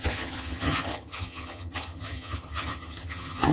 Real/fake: fake